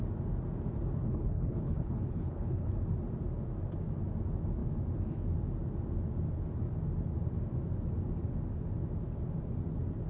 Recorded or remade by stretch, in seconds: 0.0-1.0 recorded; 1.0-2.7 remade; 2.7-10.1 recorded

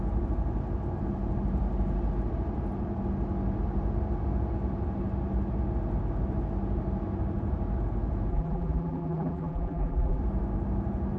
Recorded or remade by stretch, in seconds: 0.0-8.3 recorded; 8.3-10.2 remade; 10.2-11.2 recorded

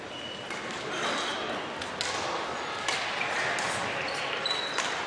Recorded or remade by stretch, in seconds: 0.0-5.1 recorded

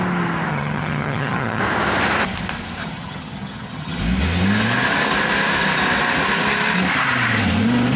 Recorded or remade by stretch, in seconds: 0.0-0.5 recorded; 0.5-1.6 remade; 1.6-2.8 recorded; 2.8-4.0 remade; 4.0-8.0 recorded

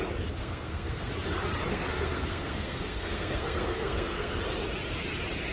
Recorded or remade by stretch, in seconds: 0.0-0.4 recorded; 0.4-1.1 remade; 1.1-1.7 recorded; 1.7-4.4 remade; 4.4-5.5 recorded